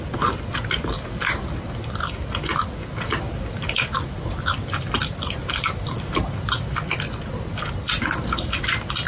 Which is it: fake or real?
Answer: real